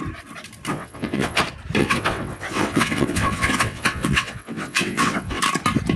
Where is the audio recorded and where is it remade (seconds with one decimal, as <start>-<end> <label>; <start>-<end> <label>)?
0.0-0.7 recorded; 0.7-1.4 remade; 1.4-1.8 recorded; 1.8-5.4 remade; 5.4-6.0 recorded

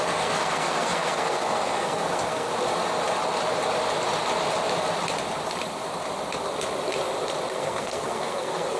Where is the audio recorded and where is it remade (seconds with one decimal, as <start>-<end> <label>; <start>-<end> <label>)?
0.0-2.5 remade; 2.5-7.5 recorded; 7.5-8.8 remade

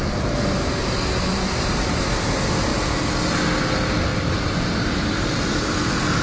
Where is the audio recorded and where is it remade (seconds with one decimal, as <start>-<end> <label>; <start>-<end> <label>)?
0.0-1.3 recorded; 1.3-2.0 remade; 2.0-4.1 recorded; 4.1-5.7 remade; 5.7-6.2 recorded

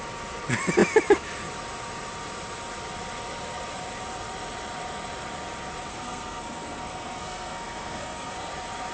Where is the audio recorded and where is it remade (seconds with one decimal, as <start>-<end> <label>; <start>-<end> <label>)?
0.0-5.9 recorded; 5.9-8.5 remade; 8.5-8.9 recorded